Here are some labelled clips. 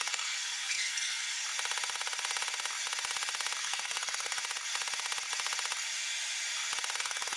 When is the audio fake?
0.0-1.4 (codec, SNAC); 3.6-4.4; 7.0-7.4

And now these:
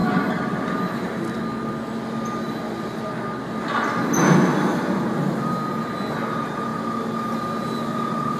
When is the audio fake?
none

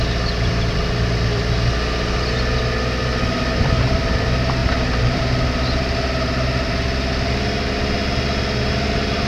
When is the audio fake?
3.1-3.7 (vocoder, BigVGAN v2); 4.6-5.2

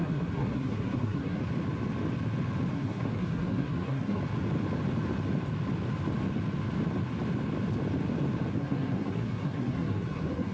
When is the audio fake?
0.0-1.4 (codec, SNAC); 2.7-4.2; 8.5-10.5

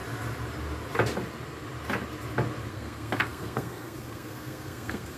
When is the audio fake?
2.7-5.2 (codec, SNAC)

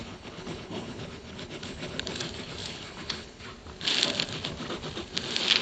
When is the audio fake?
0.0-2.2 (codec, HILCodec); 2.6-3.4

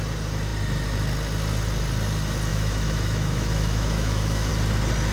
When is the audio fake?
2.5-4.5 (autoencoder, DAC-VAE)